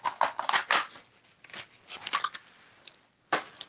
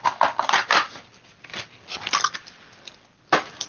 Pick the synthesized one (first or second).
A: second